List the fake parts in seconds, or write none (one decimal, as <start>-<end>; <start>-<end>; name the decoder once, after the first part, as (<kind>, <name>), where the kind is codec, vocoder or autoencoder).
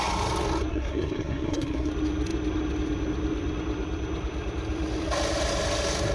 0.7-1.9 (codec, SNAC)